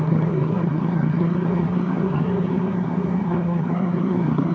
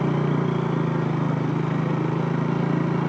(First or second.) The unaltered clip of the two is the second